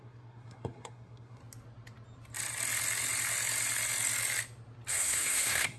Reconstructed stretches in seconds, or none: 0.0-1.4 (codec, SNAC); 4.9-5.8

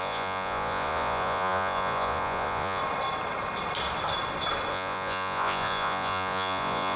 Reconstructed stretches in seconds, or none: 0.0-2.8 (vocoder, Vocos); 4.7-7.0